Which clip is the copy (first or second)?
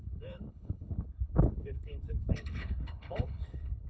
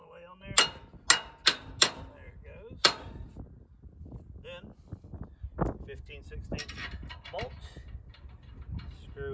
first